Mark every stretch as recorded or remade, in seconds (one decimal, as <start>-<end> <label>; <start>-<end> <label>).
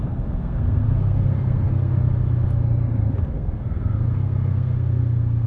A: 0.0-1.9 remade; 1.9-3.3 recorded; 3.3-5.5 remade